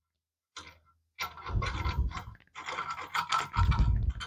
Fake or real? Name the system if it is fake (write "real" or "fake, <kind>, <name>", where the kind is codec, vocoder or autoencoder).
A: real